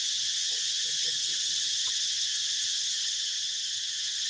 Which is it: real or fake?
fake